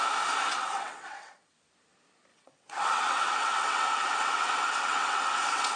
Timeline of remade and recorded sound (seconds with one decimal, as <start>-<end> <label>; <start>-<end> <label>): 0.0-0.5 recorded; 0.5-1.5 remade; 1.5-2.3 recorded; 2.3-5.8 remade